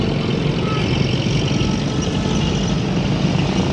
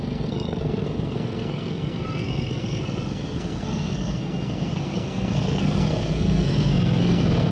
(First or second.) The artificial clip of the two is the second